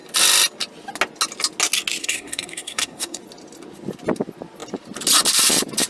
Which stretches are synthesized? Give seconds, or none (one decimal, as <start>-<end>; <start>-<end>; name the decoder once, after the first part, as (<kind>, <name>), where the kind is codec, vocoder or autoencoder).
2.0-3.2 (codec, SNAC)